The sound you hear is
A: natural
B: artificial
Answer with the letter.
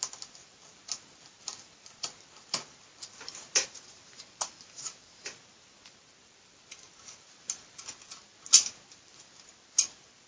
A